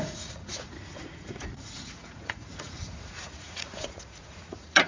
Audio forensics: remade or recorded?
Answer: remade